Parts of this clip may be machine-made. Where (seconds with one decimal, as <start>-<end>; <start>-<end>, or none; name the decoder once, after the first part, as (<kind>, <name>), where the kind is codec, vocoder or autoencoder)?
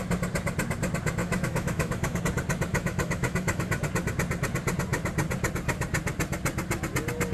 1.2-2.2 (autoencoder, DAC-VAE); 2.7-3.7